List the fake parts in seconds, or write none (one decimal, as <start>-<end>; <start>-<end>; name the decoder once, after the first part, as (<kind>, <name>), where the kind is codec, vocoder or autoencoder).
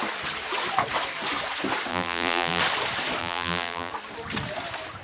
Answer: 1.9-2.6 (vocoder, BigVGAN v2); 3.2-3.9